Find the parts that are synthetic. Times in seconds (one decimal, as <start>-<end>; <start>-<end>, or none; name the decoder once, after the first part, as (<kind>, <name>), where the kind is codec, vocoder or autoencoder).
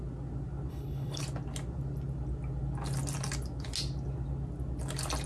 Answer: 0.7-1.2 (codec, HILCodec)